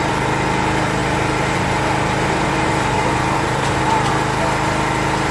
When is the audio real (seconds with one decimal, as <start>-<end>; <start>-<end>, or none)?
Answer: 0.0-1.0; 4.1-5.3